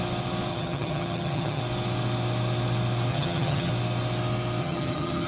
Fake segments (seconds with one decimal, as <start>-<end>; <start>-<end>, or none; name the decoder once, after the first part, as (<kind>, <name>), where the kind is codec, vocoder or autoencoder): 0.5-1.6 (vocoder, HiFi-GAN); 3.1-3.7; 4.6-5.3